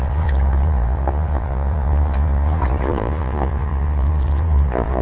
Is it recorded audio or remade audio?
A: remade